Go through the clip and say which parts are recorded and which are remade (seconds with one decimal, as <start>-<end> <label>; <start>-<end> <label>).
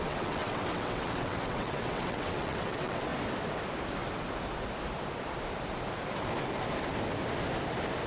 0.0-3.1 remade; 3.1-8.1 recorded